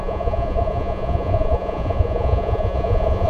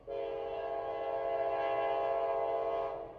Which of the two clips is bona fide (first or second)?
second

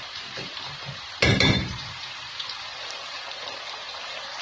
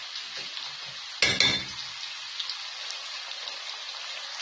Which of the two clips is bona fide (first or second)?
second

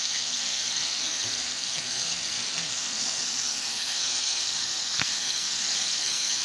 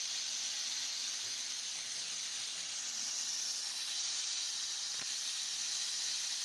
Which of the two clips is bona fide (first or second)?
second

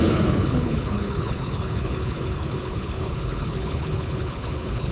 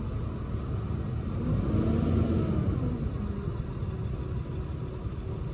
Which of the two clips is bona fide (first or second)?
second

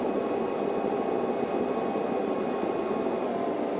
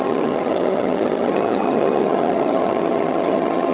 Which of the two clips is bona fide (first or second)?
first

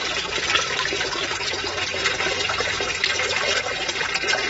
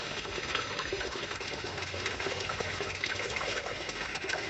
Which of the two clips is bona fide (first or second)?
first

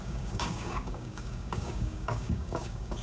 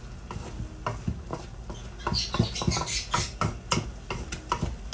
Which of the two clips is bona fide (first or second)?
second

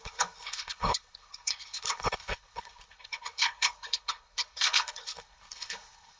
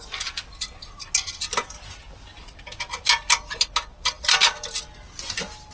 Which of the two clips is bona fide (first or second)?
second